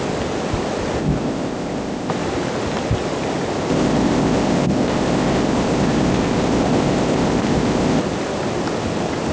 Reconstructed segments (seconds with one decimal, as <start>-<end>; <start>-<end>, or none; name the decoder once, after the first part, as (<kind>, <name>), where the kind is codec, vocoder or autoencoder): 1.0-2.1 (codec, ZipCodec); 3.7-8.0